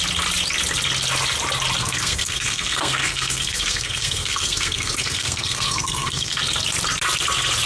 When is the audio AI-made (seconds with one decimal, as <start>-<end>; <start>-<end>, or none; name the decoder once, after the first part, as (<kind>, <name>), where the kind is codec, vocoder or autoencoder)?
1.8-6.4 (codec, SNAC)